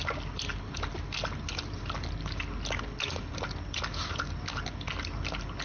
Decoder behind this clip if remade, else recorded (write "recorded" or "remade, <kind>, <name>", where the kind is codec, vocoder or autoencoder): recorded